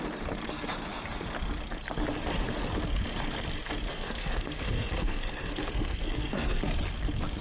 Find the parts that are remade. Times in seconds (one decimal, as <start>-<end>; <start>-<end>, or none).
3.9-6.6